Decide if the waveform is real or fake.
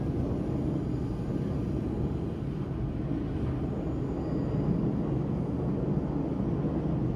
real